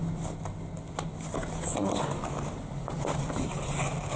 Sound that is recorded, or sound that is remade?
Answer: recorded